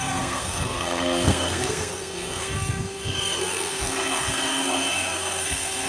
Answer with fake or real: fake